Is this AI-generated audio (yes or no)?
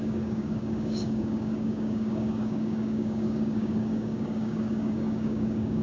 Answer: yes